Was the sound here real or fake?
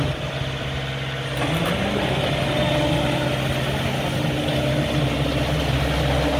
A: real